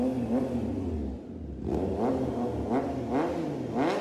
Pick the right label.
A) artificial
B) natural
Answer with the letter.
B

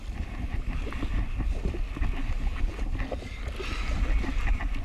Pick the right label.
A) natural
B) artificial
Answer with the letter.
A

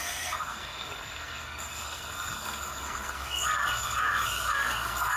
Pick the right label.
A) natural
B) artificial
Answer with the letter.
B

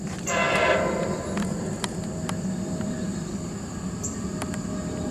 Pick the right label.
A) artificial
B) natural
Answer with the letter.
B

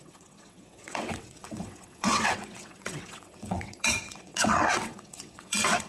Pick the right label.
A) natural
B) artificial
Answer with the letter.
B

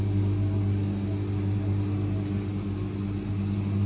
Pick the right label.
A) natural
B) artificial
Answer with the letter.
A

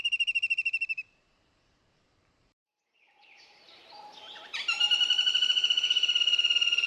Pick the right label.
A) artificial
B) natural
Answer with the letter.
A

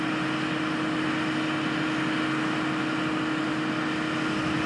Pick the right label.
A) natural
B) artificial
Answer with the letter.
A